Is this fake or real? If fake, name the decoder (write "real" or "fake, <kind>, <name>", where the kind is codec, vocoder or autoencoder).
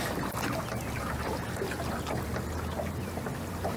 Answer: real